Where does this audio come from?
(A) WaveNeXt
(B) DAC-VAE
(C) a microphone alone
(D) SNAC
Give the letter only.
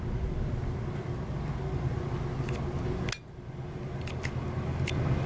C